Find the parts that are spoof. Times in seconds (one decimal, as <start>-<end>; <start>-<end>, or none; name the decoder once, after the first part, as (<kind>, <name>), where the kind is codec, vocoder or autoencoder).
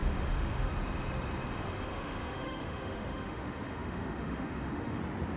0.0-0.7 (autoencoder, DAC-VAE); 1.9-5.0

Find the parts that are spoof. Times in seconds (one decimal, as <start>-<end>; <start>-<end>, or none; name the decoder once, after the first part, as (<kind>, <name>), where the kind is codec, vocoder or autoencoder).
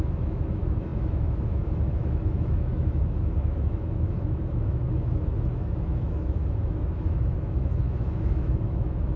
0.0-9.2 (autoencoder, DAC-VAE)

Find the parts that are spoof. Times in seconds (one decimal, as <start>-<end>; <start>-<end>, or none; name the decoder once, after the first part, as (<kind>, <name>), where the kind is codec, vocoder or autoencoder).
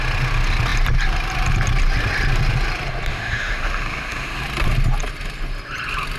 3.1-4.4 (autoencoder, DAC-VAE)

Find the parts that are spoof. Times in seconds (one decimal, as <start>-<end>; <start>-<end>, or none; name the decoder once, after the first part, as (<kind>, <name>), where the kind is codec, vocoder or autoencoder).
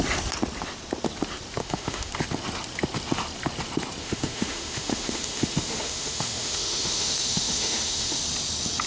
1.6-2.1 (autoencoder, DAC-VAE); 4.0-8.2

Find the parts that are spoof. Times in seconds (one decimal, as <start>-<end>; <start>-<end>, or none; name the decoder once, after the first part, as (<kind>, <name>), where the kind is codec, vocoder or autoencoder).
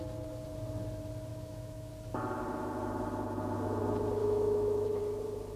1.3-1.9 (autoencoder, DAC-VAE); 4.2-5.0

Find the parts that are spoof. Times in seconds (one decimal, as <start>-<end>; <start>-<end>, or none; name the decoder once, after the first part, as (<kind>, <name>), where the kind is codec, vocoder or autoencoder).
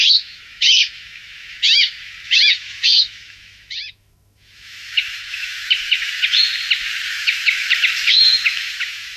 0.0-6.5 (autoencoder, DAC-VAE); 7.1-9.2